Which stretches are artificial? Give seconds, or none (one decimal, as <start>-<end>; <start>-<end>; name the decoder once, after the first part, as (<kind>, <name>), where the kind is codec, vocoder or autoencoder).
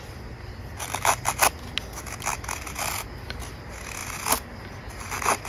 none